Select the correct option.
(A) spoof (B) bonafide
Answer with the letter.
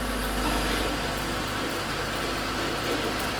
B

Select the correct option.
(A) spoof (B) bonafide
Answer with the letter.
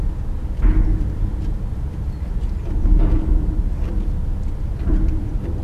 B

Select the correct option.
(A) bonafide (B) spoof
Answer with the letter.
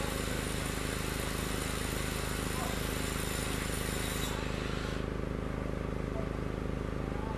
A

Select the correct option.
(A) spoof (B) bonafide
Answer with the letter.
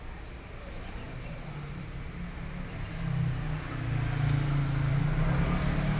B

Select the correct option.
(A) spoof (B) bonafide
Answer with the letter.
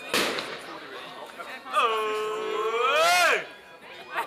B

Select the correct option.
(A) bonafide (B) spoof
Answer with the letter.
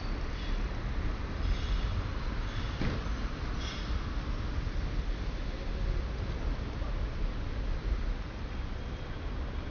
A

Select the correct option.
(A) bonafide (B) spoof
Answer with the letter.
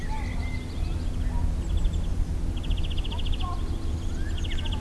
A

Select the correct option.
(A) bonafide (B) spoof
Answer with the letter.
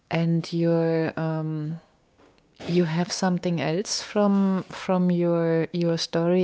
B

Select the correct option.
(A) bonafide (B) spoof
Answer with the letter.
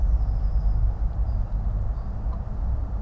A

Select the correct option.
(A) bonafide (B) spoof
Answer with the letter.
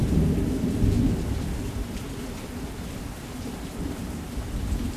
B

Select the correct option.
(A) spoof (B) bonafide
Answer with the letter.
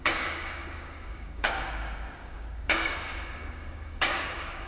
A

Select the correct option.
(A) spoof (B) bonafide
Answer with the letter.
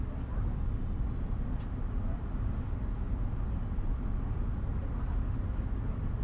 B